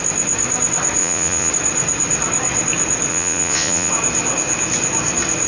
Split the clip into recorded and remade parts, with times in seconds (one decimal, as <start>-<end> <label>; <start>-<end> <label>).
0.0-1.0 recorded; 1.0-1.5 remade; 1.5-3.1 recorded; 3.1-3.9 remade; 3.9-5.5 recorded